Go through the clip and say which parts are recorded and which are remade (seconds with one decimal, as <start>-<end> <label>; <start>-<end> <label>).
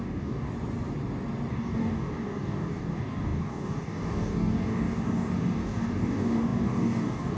0.0-0.5 remade; 0.5-1.5 recorded; 1.5-7.4 remade